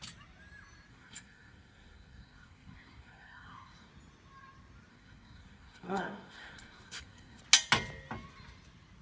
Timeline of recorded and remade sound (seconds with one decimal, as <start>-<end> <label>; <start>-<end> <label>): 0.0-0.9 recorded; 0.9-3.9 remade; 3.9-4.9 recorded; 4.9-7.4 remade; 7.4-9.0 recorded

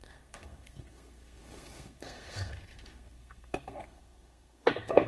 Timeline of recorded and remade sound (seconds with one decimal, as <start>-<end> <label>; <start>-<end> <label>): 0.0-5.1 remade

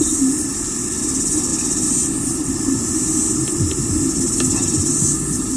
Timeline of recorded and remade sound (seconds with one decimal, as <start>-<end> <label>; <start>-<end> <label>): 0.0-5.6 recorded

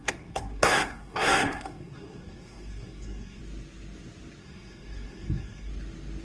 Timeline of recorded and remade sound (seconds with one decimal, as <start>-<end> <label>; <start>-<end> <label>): 0.0-3.4 remade; 3.4-4.4 recorded; 4.4-5.7 remade; 5.7-6.2 recorded